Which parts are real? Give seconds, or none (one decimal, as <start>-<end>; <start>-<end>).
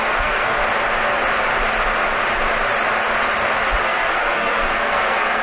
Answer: 0.6-3.8